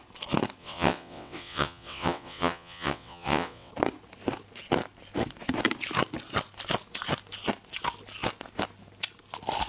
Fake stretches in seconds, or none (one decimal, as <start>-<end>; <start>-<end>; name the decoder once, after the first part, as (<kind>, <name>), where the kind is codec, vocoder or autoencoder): 0.6-3.7 (vocoder, WaveNeXt)